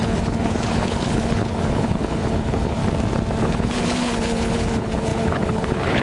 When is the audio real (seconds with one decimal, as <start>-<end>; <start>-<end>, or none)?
2.8-3.4